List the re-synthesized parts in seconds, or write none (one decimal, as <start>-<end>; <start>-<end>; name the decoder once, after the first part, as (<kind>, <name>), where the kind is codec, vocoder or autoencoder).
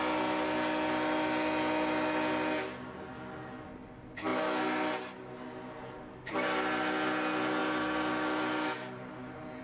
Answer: none